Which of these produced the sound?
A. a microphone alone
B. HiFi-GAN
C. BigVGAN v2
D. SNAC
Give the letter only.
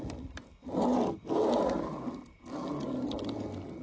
A